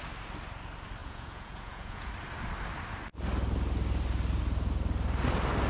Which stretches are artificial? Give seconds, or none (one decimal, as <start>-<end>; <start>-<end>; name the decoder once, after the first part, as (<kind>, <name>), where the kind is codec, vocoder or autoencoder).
1.0-2.1 (vocoder, Vocos)